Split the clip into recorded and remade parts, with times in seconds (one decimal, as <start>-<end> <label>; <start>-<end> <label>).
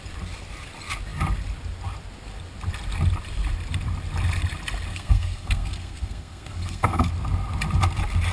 0.0-4.9 recorded; 4.9-7.1 remade; 7.1-8.3 recorded